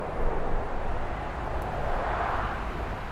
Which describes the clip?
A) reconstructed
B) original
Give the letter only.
B